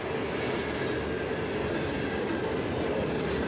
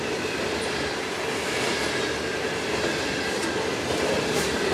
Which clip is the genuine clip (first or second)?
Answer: first